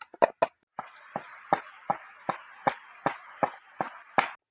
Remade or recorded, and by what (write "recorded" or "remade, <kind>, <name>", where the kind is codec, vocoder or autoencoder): recorded